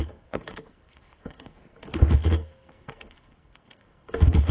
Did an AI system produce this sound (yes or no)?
yes